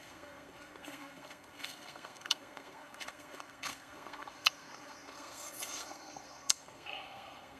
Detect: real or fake fake